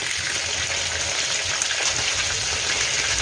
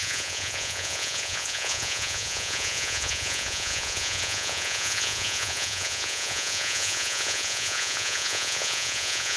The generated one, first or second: second